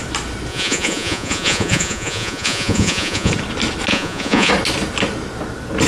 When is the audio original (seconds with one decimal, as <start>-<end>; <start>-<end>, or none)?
0.0-0.5; 3.3-3.9; 4.5-5.9